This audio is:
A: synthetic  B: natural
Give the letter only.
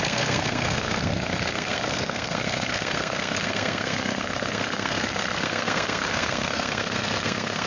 A